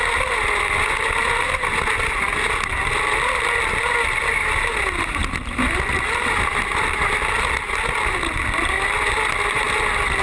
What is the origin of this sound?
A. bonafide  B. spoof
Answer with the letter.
A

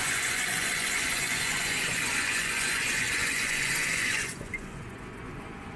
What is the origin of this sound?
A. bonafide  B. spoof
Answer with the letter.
B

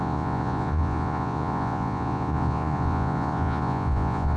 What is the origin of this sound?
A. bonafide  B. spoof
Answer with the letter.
B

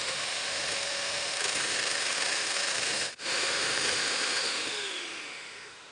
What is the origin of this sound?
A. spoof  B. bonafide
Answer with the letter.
A